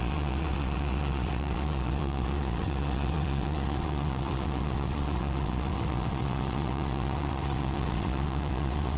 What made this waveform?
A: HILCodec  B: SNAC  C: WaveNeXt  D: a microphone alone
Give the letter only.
C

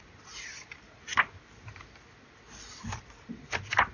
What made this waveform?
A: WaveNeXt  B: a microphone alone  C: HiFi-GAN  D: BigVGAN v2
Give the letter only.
B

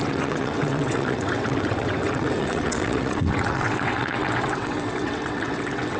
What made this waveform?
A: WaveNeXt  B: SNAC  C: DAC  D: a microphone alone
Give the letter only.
A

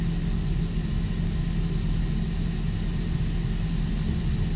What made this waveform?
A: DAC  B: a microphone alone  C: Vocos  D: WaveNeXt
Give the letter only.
B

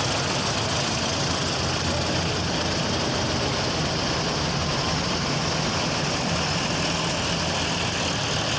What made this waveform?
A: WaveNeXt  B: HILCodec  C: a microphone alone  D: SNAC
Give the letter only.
C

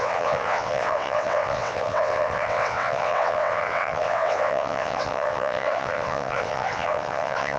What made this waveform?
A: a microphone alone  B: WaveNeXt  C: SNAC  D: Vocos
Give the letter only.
B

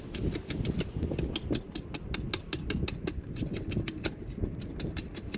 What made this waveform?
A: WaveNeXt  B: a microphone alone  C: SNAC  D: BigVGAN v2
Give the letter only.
B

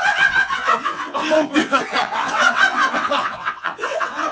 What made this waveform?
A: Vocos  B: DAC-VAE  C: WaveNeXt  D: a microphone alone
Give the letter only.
C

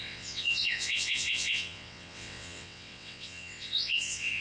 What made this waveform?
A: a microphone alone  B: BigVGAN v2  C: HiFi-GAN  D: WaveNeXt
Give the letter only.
D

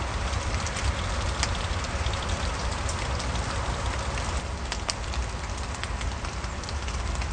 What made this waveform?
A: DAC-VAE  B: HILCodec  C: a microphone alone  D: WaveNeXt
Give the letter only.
C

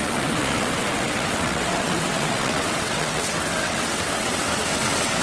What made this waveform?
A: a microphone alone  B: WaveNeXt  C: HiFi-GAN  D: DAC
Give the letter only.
B